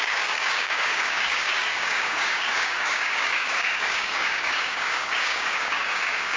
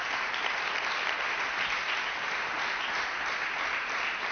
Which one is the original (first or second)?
second